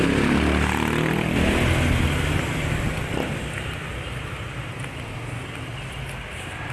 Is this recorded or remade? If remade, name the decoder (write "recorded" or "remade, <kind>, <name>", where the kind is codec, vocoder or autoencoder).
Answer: recorded